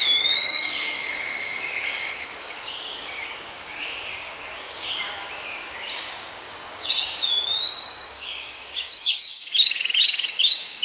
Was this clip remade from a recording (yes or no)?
yes